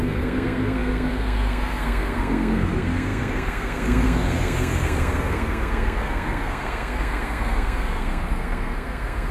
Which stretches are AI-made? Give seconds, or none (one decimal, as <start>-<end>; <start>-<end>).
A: 0.0-9.3